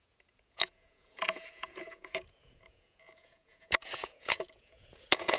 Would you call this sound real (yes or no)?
no